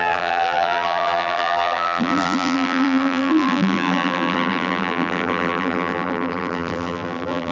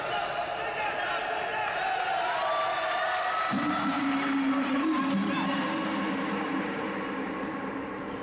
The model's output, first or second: first